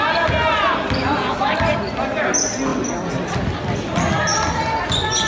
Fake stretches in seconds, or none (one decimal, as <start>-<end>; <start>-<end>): none